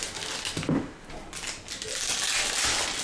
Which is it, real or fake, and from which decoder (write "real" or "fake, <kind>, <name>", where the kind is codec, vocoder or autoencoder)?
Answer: real